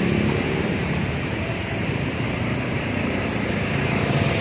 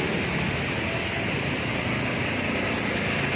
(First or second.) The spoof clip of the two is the first